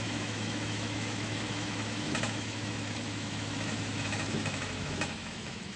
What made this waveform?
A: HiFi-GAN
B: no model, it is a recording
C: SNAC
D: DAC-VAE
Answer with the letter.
D